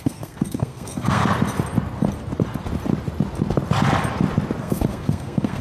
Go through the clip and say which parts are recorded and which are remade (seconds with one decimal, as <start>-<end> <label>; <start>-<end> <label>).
0.0-1.2 remade; 1.2-4.6 recorded; 4.6-5.6 remade